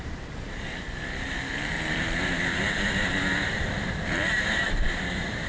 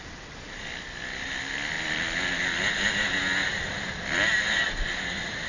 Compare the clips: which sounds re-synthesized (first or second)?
first